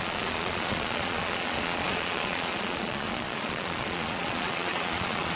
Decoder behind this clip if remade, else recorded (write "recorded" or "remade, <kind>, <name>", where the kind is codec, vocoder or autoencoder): remade, vocoder, Vocos